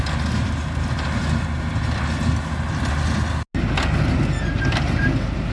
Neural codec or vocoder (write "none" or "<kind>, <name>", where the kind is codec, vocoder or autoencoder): none